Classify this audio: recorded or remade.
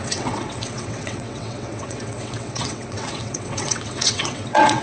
remade